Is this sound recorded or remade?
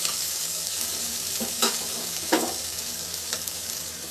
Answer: remade